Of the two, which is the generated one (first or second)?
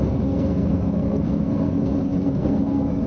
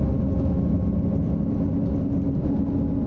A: first